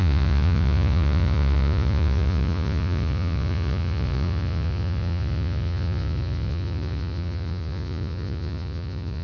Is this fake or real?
fake